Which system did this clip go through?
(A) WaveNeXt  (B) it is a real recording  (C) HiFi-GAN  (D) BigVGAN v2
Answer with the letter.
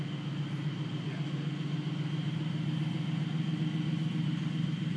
B